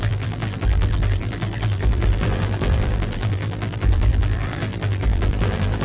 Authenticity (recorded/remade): remade